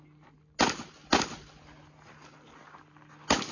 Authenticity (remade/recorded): recorded